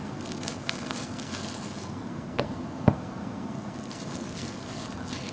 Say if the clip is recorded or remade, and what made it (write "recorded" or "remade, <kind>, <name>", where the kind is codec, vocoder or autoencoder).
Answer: remade, codec, SNAC